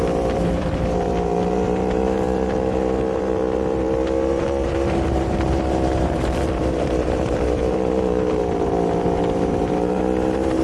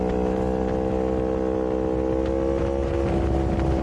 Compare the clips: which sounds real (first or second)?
second